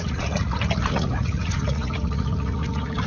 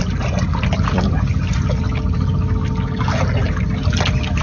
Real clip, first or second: second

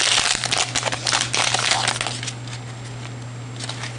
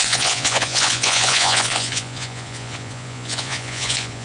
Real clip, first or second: first